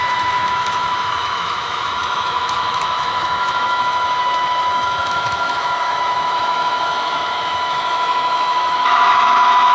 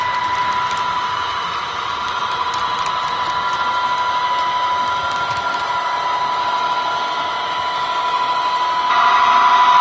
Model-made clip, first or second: first